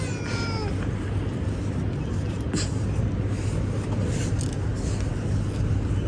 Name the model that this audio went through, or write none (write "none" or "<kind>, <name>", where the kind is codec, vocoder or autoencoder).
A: none